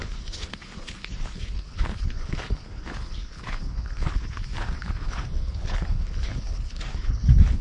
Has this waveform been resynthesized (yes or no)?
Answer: yes